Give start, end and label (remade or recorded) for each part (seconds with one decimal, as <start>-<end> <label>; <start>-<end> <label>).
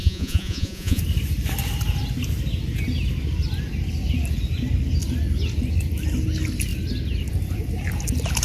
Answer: 0.0-1.0 remade; 1.0-8.4 recorded